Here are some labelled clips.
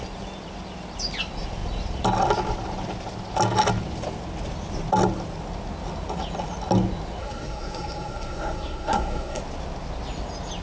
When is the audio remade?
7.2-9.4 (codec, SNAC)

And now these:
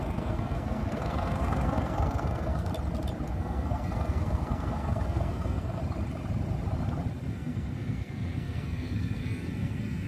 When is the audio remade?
0.0-2.7 (codec, SNAC); 3.3-5.8; 7.3-10.1

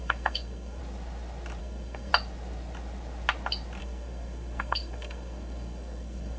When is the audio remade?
0.0-0.8 (codec, SNAC); 1.6-2.1; 3.8-6.4

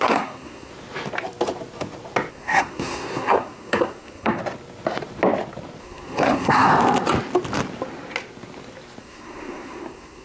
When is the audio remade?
0.0-0.7 (codec, SNAC); 2.3-4.4; 5.8-6.7; 9.0-10.2

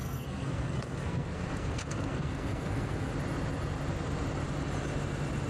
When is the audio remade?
0.0-3.1 (codec, SNAC)